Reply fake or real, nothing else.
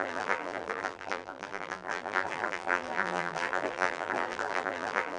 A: fake